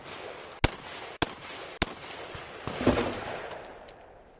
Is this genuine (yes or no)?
yes